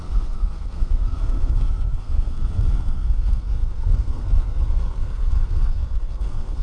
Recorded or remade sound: remade